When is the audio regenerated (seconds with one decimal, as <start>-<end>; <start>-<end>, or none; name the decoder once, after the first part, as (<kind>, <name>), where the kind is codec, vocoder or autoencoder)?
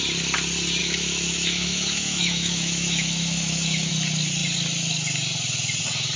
0.8-3.9 (autoencoder, DAC-VAE)